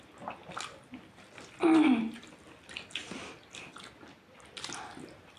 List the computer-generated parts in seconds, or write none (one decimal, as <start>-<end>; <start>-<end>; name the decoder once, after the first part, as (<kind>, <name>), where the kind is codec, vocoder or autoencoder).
none